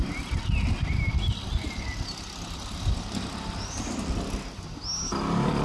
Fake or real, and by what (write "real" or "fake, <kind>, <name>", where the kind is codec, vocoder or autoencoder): real